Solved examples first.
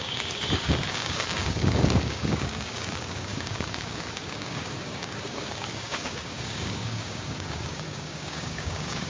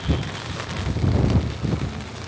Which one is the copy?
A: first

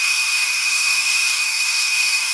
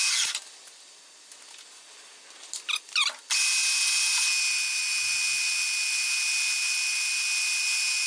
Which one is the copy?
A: first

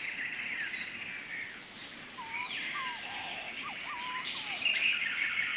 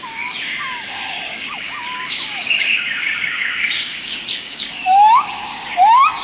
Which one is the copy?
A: second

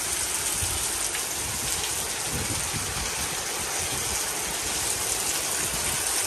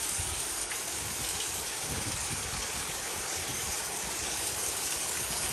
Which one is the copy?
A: second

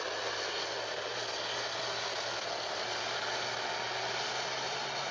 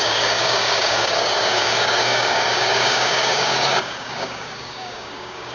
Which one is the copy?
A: second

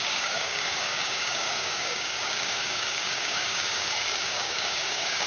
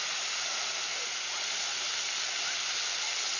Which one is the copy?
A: first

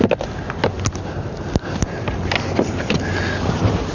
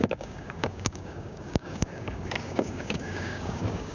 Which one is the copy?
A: second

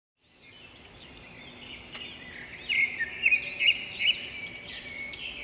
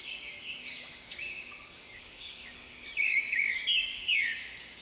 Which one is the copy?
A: second